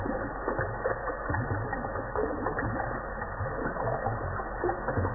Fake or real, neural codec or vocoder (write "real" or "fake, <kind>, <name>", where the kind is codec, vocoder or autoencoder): real